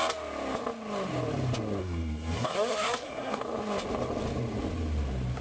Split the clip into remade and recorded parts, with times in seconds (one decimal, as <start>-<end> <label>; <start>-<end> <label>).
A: 0.0-1.8 recorded; 1.8-3.4 remade; 3.4-5.4 recorded